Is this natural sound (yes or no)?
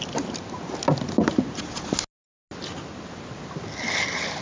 yes